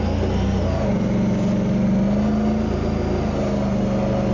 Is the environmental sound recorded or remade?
recorded